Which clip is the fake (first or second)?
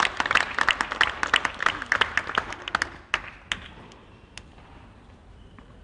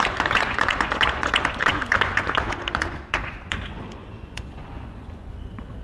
second